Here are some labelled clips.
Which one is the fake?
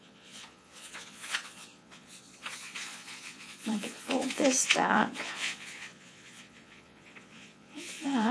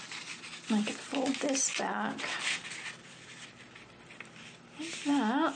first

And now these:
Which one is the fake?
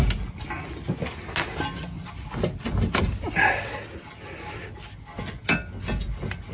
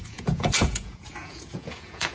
second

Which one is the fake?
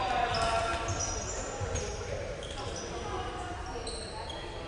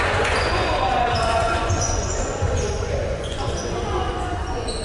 second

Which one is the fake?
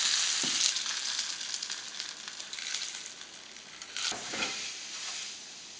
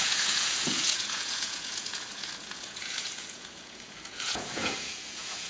second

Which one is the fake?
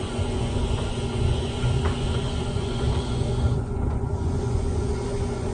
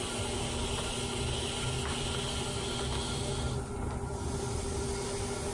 first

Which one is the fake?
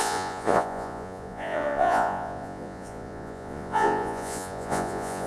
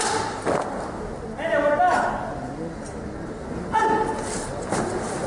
first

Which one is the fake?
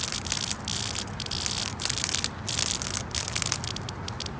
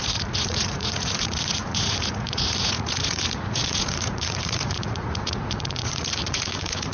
second